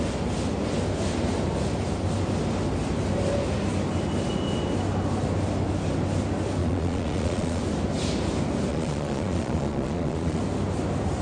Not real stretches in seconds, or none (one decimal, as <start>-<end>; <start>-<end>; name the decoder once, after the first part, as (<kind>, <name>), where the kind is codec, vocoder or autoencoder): 6.6-7.6 (vocoder, Vocos); 8.7-10.4